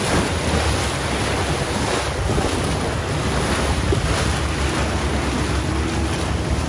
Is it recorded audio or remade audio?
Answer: recorded